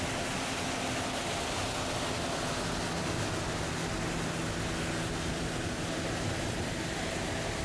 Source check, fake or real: real